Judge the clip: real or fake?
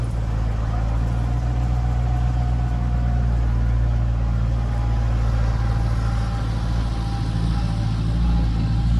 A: real